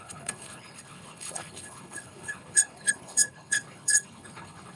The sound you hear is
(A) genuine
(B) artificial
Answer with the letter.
B